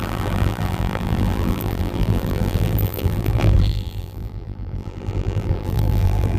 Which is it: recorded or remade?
remade